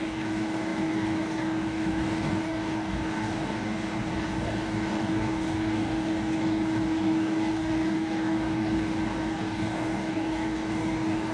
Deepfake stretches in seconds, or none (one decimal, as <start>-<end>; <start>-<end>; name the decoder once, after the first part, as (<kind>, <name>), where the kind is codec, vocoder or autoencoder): 0.0-11.3 (codec, DAC)